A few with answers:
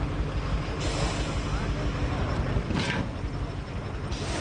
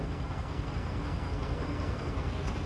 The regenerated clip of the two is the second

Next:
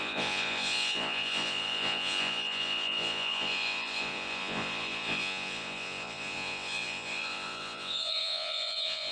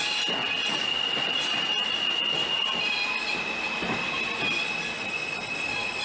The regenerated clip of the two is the first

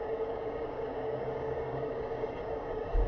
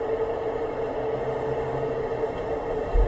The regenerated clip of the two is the first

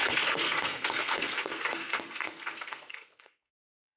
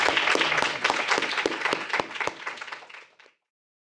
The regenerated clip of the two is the first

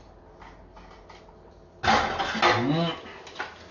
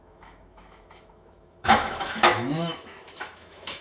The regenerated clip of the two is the second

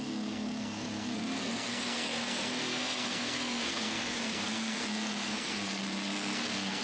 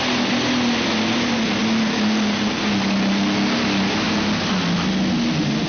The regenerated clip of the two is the first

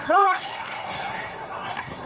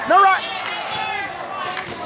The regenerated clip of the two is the first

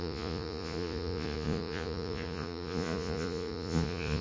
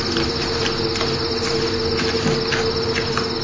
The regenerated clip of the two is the first